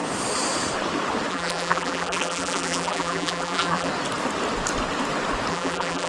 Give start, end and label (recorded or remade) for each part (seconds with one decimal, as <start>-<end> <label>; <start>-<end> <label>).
0.0-1.3 recorded; 1.3-3.9 remade; 3.9-5.5 recorded; 5.5-6.1 remade